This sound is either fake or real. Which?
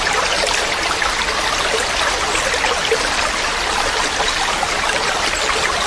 real